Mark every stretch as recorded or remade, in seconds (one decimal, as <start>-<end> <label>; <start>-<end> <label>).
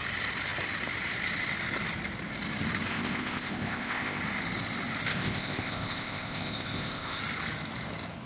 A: 0.0-2.9 recorded; 2.9-4.2 remade; 4.2-5.1 recorded; 5.1-7.2 remade; 7.2-8.3 recorded